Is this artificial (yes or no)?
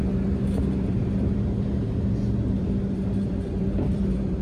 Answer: yes